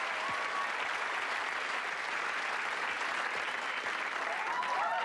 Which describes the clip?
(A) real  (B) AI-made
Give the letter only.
A